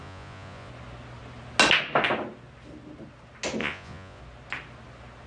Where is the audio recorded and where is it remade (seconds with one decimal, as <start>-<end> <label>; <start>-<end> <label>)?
0.0-0.7 remade; 0.7-3.6 recorded; 3.6-4.2 remade; 4.2-5.3 recorded